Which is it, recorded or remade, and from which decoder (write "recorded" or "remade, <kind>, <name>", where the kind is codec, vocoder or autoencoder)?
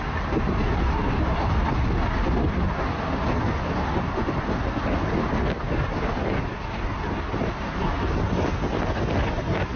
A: recorded